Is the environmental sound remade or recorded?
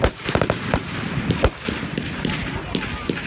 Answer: recorded